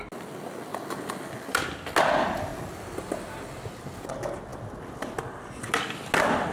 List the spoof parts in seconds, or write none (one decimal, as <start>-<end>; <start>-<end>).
none